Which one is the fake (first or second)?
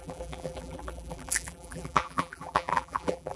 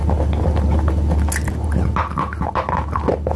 first